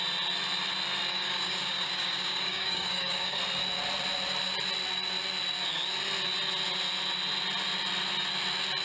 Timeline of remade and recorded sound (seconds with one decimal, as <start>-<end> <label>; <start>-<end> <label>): 0.0-1.1 recorded; 1.1-3.4 remade; 3.4-8.8 recorded

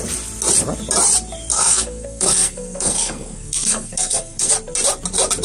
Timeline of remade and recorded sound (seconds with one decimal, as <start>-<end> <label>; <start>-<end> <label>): 0.0-1.5 recorded; 1.5-4.5 remade; 4.5-5.4 recorded